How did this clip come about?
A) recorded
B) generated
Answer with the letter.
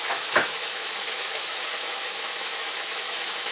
B